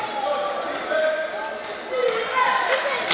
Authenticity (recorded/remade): recorded